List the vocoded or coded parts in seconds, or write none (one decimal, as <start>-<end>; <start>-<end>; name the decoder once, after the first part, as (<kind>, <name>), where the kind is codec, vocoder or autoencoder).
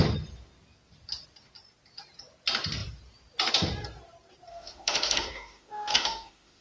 4.5-6.6 (autoencoder, DAC-VAE)